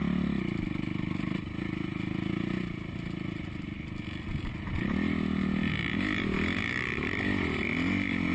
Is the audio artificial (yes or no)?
no